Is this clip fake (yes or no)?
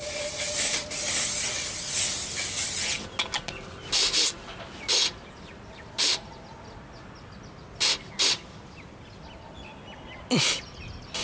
no